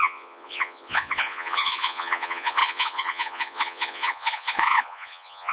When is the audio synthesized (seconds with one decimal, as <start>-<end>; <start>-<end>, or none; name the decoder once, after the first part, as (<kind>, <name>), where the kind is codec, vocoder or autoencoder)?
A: 0.0-5.5 (vocoder, Vocos)